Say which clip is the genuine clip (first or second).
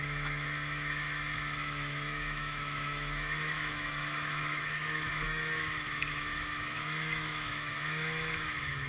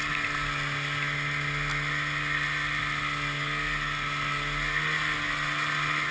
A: second